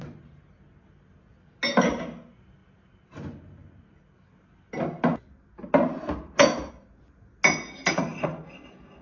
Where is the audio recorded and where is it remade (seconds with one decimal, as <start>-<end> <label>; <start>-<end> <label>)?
0.0-9.0 recorded